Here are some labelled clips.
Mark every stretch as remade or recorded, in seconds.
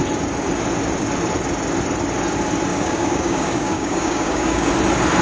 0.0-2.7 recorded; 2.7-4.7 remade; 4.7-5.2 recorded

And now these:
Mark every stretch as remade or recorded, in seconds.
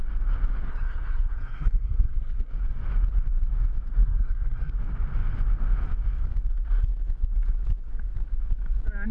0.0-0.7 recorded; 0.7-2.5 remade; 2.5-3.9 recorded; 3.9-4.7 remade; 4.7-9.1 recorded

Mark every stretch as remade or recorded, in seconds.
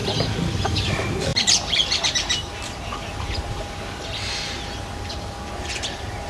0.0-0.5 recorded; 0.5-6.3 remade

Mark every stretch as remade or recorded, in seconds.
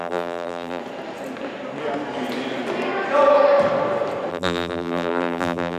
0.0-0.8 remade; 0.8-4.3 recorded; 4.3-5.8 remade